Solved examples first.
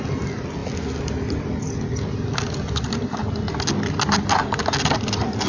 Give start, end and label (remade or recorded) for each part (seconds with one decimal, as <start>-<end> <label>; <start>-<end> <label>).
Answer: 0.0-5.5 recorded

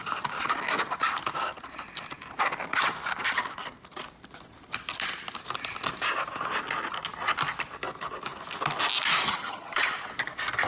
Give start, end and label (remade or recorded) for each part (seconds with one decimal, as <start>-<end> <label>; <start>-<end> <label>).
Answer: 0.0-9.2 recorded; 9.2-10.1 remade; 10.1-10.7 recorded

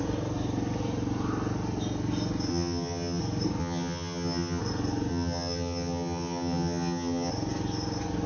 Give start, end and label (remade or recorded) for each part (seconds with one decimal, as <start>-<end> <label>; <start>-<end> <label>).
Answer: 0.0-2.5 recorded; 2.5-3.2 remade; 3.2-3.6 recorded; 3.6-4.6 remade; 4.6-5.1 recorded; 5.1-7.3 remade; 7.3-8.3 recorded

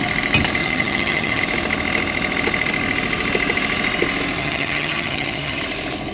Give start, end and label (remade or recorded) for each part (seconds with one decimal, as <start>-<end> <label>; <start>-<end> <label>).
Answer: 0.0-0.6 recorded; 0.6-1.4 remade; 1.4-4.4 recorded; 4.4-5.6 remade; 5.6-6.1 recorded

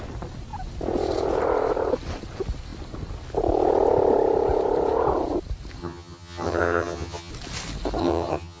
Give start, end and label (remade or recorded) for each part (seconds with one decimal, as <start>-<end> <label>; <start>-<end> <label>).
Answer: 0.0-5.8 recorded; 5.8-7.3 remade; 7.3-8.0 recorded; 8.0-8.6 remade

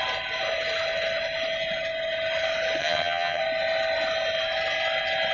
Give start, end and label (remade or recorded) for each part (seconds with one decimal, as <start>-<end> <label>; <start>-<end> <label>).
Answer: 0.0-2.8 recorded; 2.8-3.4 remade; 3.4-5.3 recorded

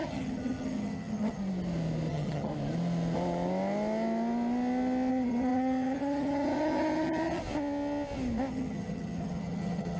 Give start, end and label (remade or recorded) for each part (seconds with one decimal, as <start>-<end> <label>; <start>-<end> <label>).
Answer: 0.0-1.4 remade; 1.4-2.1 recorded; 2.1-2.5 remade; 2.5-5.1 recorded; 5.1-7.4 remade; 7.4-8.5 recorded; 8.5-10.0 remade